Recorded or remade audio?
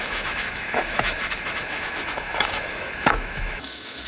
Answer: remade